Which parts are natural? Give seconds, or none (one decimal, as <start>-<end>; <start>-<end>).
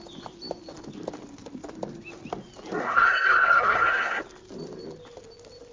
0.0-2.8; 4.2-5.7